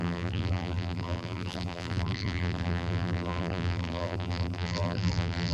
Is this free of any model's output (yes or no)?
no